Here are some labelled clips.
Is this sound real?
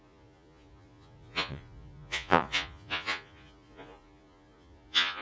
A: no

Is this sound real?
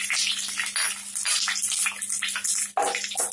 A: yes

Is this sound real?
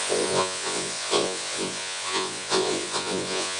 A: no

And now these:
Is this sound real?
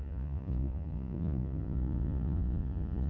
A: no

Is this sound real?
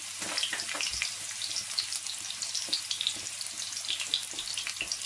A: yes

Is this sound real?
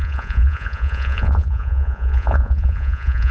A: no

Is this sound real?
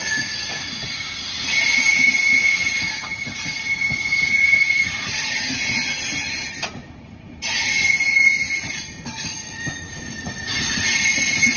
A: no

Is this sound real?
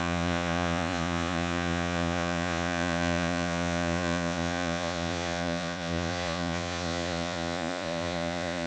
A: no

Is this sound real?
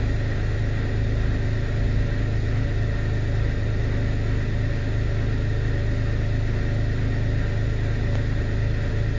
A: yes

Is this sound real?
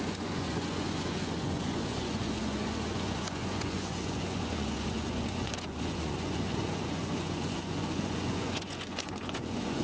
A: no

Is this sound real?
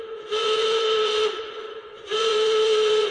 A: no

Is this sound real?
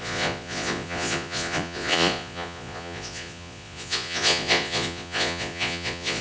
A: no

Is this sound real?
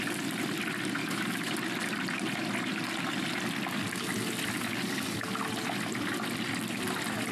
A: yes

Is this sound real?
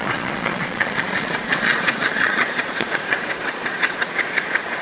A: no